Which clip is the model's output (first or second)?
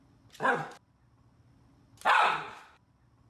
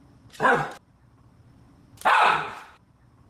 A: second